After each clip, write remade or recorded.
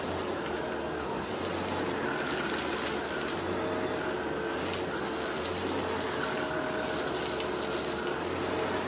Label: recorded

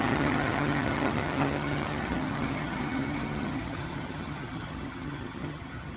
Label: remade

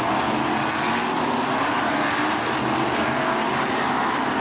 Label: recorded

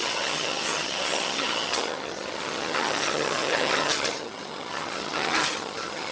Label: remade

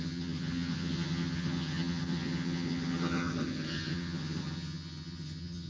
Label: remade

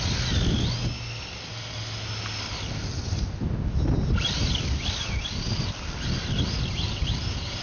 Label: recorded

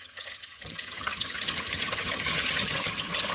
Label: remade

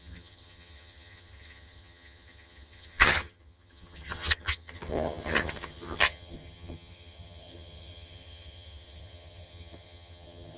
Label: remade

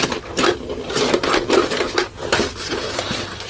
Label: recorded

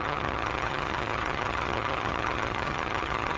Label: remade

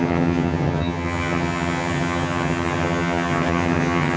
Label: remade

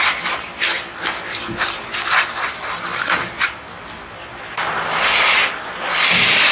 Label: recorded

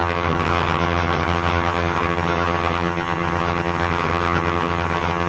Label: remade